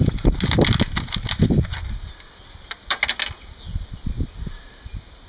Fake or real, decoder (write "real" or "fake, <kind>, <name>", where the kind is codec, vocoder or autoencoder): real